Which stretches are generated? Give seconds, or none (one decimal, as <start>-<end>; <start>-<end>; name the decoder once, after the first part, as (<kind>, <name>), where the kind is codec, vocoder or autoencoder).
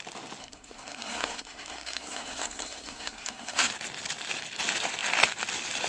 0.4-3.7 (codec, SNAC)